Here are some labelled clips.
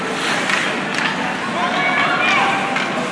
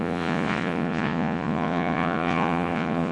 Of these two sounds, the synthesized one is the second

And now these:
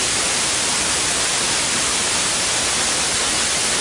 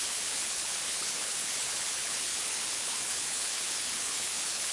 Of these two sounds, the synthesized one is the second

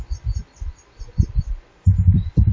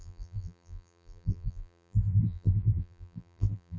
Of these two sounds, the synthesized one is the second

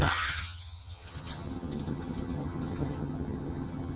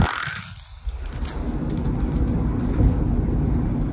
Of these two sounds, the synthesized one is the first